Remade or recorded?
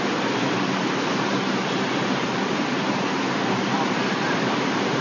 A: remade